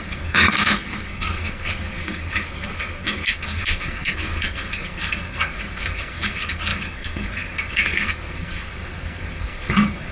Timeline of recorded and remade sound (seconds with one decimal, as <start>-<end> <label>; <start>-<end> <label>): 0.0-10.1 remade